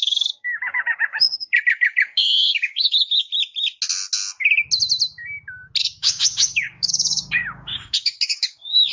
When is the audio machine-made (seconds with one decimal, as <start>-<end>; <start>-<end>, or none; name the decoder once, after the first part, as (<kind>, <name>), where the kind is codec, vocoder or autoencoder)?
0.0-3.3 (codec, DAC); 5.8-8.9